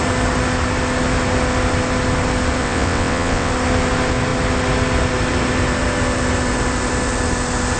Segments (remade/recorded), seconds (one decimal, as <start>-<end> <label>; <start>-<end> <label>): 0.0-2.6 recorded; 2.6-3.5 remade; 3.5-7.8 recorded